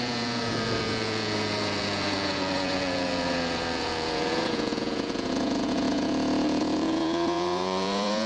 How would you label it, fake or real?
fake